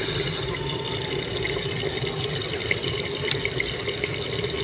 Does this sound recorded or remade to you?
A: recorded